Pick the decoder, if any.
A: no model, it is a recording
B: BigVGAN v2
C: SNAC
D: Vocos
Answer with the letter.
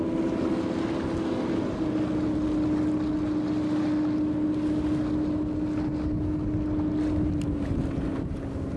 A